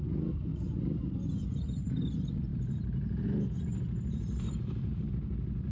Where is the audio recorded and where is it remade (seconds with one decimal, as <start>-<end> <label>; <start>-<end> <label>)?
0.0-5.7 recorded